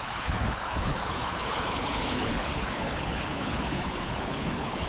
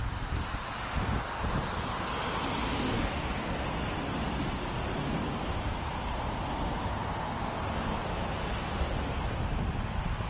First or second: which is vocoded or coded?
first